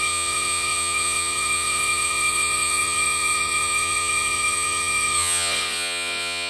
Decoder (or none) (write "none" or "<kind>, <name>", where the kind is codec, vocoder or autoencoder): vocoder, Vocos